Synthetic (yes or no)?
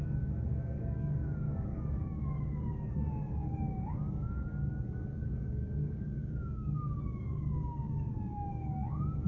yes